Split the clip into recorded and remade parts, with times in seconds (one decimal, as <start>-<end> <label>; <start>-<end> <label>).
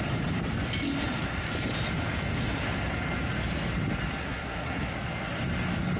0.0-4.2 recorded; 4.2-4.9 remade; 4.9-6.0 recorded